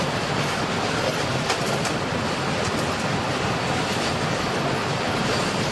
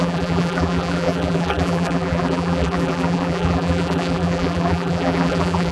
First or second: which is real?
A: first